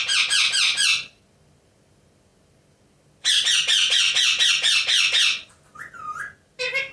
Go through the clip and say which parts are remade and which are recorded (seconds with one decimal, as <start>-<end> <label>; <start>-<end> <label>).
0.0-6.9 recorded